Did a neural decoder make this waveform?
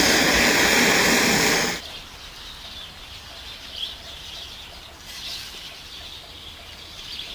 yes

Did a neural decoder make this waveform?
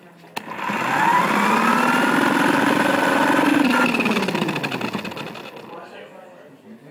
no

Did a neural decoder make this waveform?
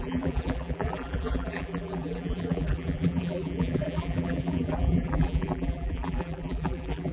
yes